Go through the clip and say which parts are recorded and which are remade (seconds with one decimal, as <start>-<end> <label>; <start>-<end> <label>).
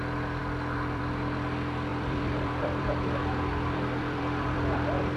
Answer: 0.0-0.4 recorded; 0.4-1.0 remade; 1.0-1.9 recorded; 1.9-5.2 remade